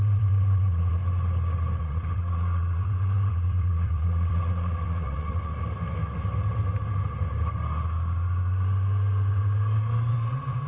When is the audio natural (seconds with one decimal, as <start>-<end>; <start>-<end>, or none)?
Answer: 1.0-1.8; 5.5-10.1